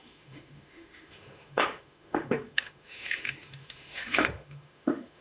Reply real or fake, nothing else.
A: fake